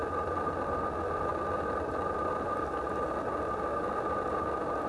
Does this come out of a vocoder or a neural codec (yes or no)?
no